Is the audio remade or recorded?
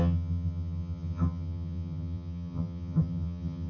remade